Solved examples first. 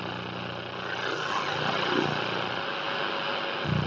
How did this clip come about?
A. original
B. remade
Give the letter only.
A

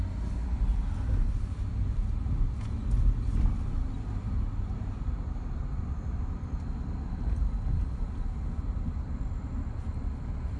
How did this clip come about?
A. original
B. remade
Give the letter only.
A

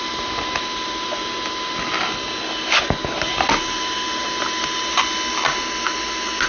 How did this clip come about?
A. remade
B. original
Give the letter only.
B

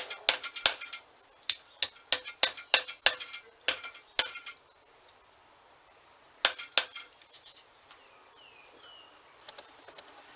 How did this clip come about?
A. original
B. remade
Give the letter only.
A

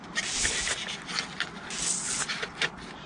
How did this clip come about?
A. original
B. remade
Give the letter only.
A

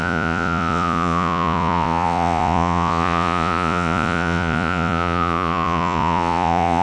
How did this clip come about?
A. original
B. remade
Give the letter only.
B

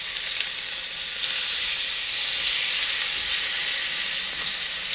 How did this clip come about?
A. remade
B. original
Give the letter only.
B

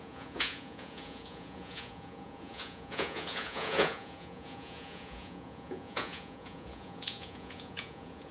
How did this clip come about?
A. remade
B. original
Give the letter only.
A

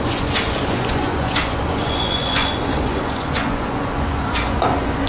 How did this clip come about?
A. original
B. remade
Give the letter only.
B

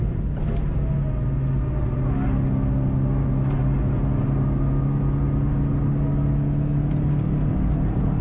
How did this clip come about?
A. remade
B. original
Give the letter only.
B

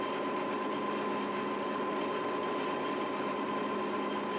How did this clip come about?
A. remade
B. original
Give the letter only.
B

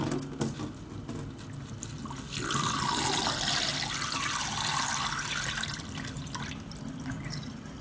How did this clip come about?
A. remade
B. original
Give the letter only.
B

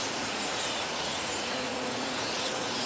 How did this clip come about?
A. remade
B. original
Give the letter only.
A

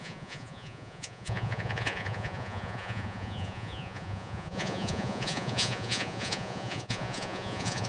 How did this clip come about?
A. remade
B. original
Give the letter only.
A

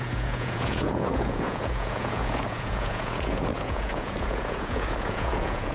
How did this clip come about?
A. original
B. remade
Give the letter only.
B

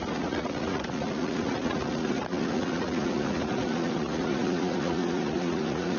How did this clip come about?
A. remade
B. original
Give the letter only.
A